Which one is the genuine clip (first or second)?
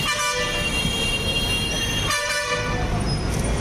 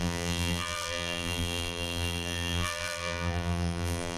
first